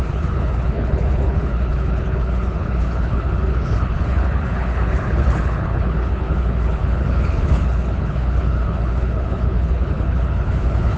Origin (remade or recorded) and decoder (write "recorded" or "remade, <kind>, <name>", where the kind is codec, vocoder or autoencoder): remade, codec, HILCodec